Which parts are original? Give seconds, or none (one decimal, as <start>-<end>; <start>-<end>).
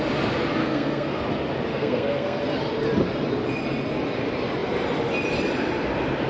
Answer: 0.0-0.6; 1.2-1.7; 2.4-6.3